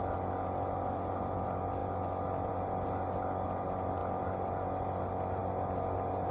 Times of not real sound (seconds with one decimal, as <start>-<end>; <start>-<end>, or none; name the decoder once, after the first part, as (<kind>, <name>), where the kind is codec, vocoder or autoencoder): none